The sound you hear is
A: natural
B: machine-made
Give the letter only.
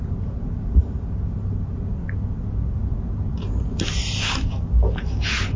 A